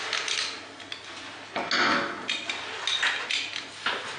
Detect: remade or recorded recorded